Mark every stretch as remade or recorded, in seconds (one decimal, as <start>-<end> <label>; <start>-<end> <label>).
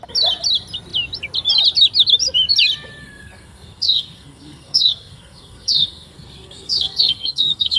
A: 0.0-3.0 recorded; 3.0-7.8 remade